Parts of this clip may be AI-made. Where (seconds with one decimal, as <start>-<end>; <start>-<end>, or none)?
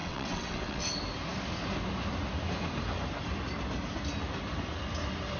0.0-0.9